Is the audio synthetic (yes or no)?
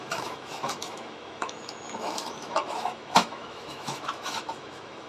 yes